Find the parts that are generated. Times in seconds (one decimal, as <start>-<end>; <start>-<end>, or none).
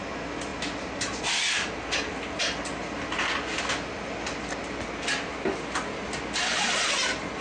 none